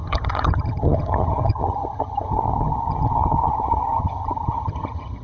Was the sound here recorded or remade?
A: remade